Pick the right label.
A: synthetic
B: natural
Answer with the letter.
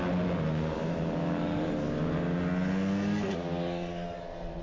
B